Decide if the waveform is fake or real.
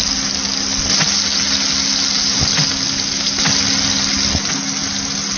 real